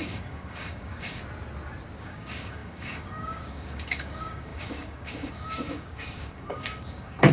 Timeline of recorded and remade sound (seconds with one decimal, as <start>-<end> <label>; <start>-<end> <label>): 0.0-1.2 remade; 1.2-2.0 recorded; 2.0-7.3 remade